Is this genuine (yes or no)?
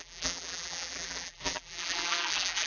no